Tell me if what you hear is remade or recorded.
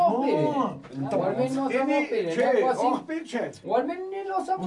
recorded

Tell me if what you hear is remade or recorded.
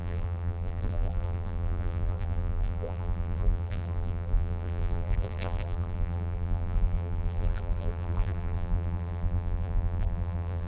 remade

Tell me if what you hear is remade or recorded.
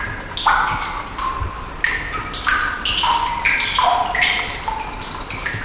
recorded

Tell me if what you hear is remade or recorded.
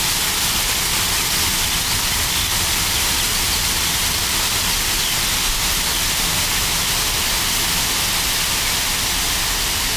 recorded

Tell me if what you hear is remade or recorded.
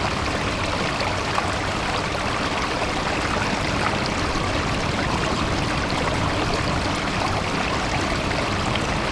recorded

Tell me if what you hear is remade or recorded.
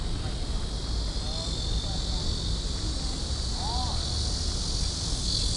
recorded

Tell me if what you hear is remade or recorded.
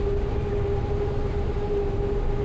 recorded